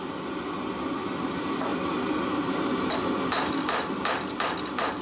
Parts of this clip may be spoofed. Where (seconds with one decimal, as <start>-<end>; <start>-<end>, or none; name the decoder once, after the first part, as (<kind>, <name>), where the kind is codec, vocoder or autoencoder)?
none